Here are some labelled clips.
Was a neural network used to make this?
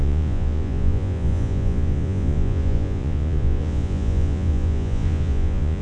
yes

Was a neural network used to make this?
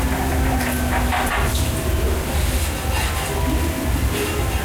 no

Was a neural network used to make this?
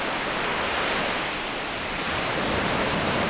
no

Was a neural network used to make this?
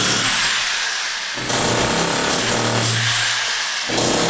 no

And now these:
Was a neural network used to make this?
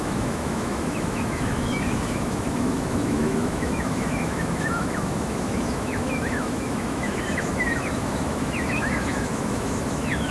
yes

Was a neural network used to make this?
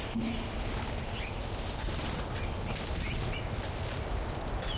no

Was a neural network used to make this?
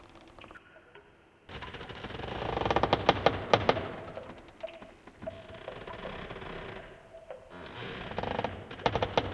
no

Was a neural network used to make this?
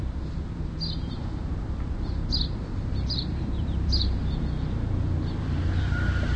yes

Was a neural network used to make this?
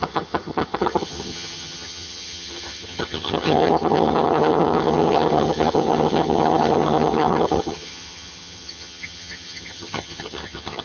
yes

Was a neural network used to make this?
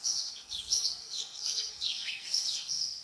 yes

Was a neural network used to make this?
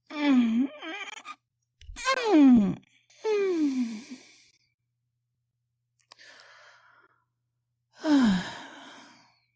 no